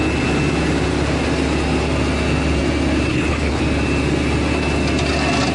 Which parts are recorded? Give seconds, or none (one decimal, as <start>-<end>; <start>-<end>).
0.0-3.1; 3.6-5.5